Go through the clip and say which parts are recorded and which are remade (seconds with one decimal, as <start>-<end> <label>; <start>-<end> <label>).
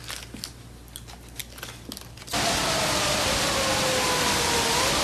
0.0-5.0 recorded